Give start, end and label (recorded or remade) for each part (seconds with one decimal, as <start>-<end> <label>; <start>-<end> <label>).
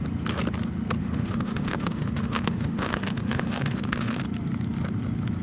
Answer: 0.0-1.0 recorded; 1.0-4.2 remade; 4.2-5.4 recorded